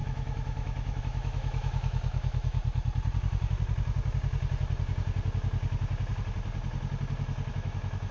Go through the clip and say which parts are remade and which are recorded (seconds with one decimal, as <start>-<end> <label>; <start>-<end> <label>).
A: 0.0-2.6 remade; 2.6-7.5 recorded; 7.5-8.1 remade